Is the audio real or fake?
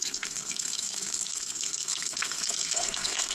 fake